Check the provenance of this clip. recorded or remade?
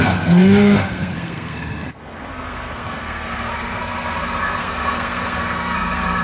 remade